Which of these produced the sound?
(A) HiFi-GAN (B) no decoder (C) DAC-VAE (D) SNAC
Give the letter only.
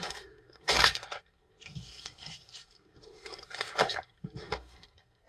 D